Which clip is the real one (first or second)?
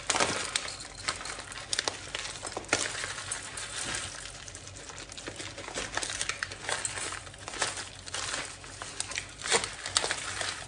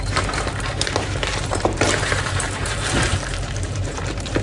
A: first